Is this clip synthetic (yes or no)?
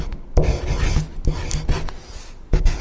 no